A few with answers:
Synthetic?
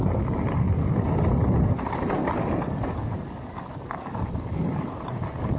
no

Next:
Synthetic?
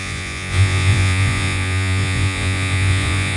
yes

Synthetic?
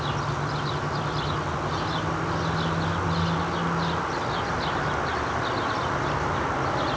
no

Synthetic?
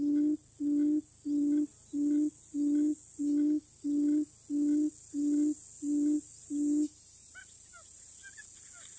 no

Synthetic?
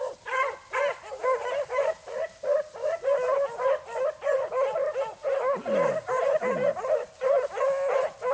no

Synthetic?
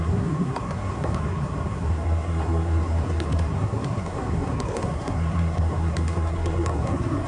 yes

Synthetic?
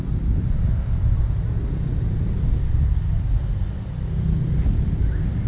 no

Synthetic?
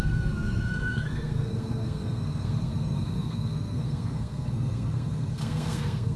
yes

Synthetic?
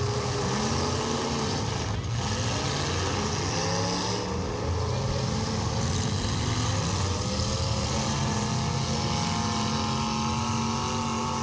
no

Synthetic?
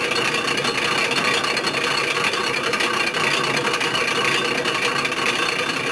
no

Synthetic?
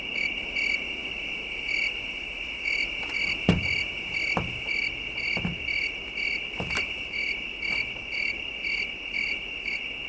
no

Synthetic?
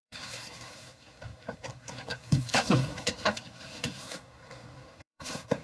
yes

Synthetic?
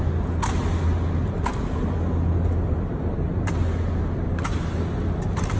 no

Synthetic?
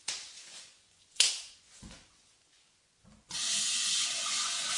yes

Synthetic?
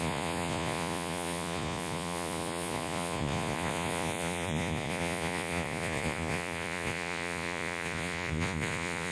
yes